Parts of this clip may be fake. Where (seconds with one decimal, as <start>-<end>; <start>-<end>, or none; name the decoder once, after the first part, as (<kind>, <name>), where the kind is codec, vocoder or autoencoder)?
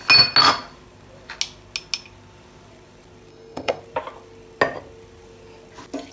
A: 3.3-3.8 (codec, SNAC)